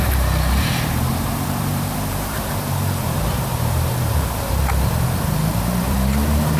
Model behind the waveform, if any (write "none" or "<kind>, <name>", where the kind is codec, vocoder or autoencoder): vocoder, BigVGAN v2